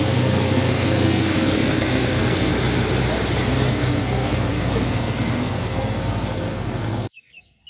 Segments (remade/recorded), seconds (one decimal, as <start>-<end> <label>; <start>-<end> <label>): 0.0-2.5 remade; 2.5-3.7 recorded; 3.7-7.7 remade